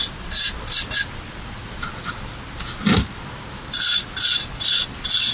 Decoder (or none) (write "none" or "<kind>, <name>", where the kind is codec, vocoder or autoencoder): none